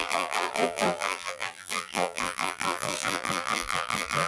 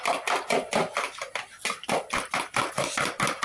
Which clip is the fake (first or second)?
first